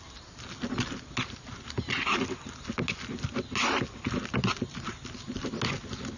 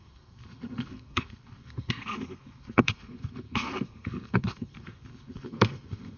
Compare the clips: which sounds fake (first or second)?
second